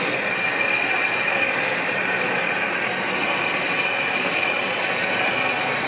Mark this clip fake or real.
real